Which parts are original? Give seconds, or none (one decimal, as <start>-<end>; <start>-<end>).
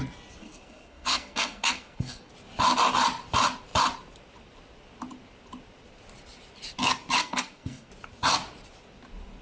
0.0-0.4; 2.3-7.2; 7.9-9.4